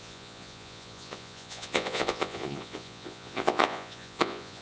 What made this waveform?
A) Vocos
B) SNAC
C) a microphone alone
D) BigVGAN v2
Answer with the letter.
A